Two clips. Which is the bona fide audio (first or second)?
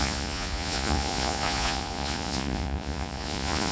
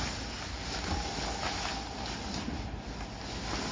second